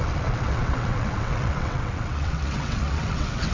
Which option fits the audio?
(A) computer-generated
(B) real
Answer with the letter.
A